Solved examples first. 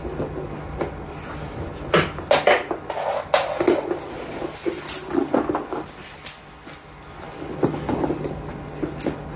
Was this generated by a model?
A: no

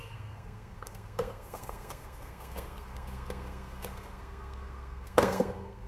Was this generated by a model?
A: yes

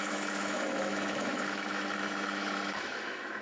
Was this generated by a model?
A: yes